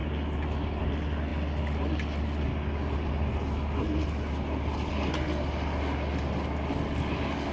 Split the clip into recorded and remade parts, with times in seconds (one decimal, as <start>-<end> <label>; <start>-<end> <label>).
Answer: 0.0-7.5 recorded